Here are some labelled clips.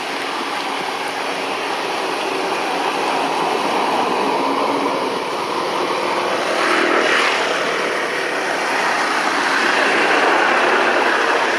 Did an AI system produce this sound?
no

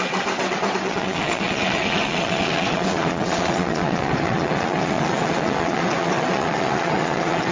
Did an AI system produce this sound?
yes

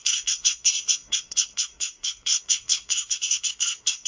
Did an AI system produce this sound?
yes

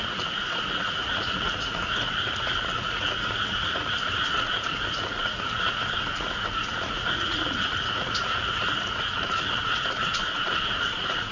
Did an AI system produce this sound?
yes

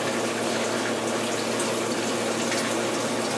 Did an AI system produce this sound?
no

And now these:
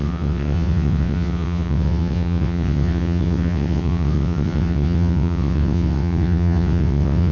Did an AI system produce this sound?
yes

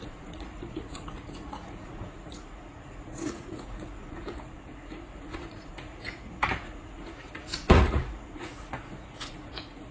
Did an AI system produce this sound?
yes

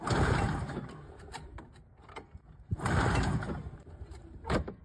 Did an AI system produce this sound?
yes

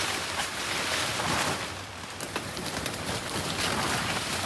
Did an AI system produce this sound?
yes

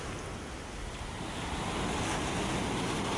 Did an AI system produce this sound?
no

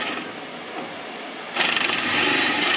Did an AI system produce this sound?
no